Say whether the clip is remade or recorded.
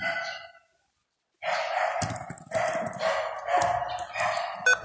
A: recorded